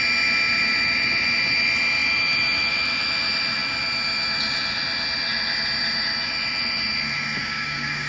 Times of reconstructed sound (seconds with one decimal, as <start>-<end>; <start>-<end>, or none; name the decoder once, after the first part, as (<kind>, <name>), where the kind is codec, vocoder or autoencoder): 7.4-8.1 (codec, DAC)

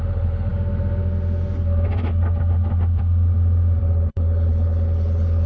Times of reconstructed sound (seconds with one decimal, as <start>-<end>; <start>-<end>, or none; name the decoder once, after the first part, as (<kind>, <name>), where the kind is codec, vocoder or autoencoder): 0.0-0.5 (codec, HILCodec); 3.8-5.5

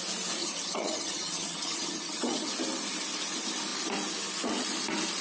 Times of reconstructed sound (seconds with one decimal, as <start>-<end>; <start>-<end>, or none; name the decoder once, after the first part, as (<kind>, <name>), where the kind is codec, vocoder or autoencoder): 0.4-2.5 (vocoder, HiFi-GAN)

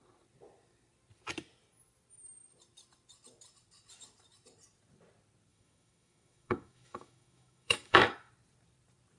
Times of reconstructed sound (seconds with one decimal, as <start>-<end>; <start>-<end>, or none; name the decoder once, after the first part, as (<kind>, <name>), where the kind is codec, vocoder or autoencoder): 5.5-8.3 (autoencoder, DAC-VAE)